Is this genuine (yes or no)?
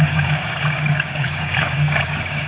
no